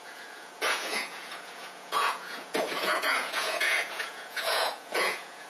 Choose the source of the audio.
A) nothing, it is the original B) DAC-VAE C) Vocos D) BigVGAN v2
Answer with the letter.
C